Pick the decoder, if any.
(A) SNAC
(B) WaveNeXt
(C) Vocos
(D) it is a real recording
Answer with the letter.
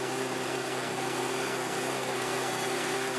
A